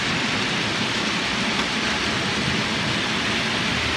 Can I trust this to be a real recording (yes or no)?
yes